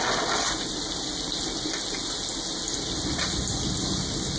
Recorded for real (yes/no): yes